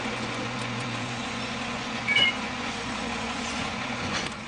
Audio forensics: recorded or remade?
remade